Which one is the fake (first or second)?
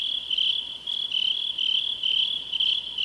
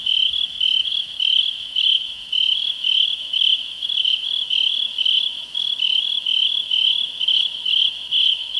second